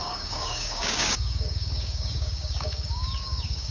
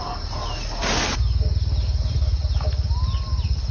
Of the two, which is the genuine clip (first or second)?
second